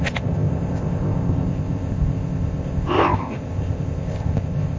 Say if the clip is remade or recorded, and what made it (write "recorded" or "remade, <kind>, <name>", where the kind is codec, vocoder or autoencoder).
remade, codec, ZipCodec